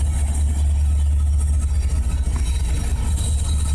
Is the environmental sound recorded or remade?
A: recorded